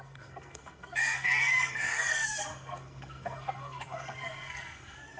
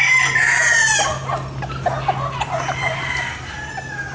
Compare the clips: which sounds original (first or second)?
second